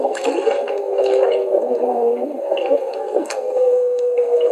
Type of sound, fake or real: fake